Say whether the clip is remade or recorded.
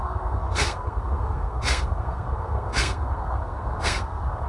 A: remade